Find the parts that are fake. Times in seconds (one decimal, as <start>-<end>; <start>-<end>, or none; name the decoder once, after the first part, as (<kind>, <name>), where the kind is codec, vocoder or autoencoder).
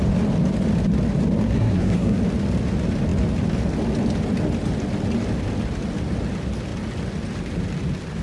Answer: 1.4-2.2 (codec, SNAC)